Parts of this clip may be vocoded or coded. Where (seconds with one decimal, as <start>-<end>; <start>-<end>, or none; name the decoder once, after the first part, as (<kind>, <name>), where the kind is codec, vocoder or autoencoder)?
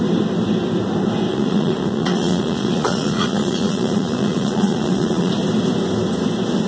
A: 1.3-5.3 (vocoder, Vocos)